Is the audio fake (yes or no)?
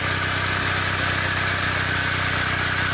no